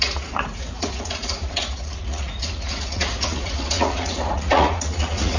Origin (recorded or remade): remade